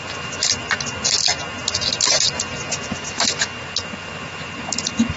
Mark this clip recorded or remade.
recorded